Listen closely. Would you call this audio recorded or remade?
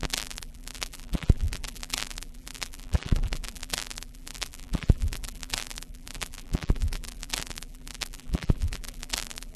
remade